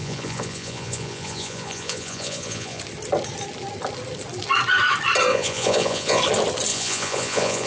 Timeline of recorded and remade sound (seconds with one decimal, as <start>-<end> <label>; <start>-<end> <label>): 0.0-2.8 remade; 2.8-5.3 recorded; 5.3-6.2 remade; 6.2-6.7 recorded; 6.7-7.7 remade